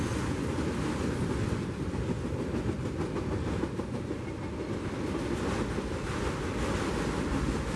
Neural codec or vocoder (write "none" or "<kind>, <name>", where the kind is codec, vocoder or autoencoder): none